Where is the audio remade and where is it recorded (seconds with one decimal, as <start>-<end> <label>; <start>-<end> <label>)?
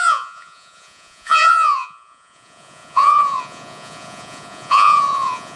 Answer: 0.0-5.6 remade